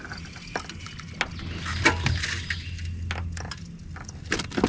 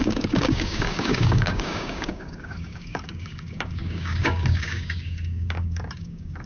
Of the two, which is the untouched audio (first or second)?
first